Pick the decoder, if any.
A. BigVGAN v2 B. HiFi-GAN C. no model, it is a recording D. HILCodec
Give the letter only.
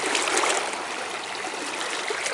C